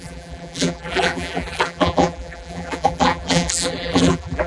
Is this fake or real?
fake